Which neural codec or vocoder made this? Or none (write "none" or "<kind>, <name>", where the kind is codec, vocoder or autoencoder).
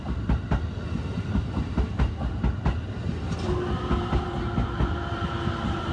none